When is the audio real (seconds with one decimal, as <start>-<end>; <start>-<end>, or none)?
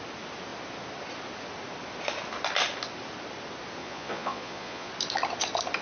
0.0-3.8; 4.9-5.8